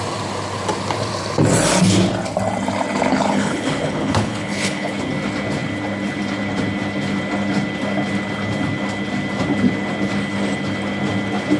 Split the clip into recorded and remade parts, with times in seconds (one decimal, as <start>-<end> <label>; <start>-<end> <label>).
0.0-3.1 recorded; 3.1-4.9 remade; 4.9-11.6 recorded